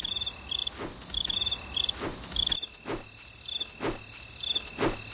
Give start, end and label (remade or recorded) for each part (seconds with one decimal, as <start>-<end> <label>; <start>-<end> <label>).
0.0-5.1 recorded